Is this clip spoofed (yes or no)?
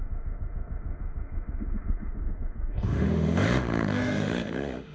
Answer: yes